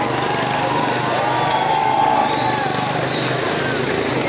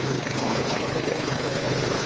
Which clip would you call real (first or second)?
first